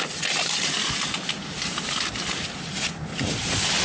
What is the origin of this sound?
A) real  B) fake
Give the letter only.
A